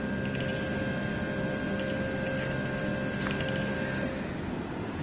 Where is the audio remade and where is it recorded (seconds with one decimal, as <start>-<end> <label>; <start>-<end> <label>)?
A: 0.0-5.0 recorded